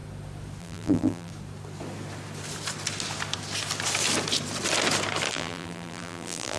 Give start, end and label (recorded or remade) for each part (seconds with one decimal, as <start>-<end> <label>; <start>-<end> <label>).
0.0-0.6 recorded; 0.6-1.3 remade; 1.3-5.3 recorded; 5.3-6.6 remade